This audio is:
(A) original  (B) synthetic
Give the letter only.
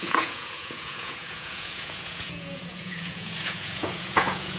B